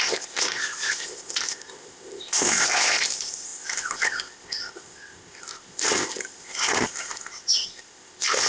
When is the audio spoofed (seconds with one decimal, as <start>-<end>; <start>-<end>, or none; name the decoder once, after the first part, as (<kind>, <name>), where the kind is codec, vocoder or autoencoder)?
0.0-8.5 (codec, ZipCodec)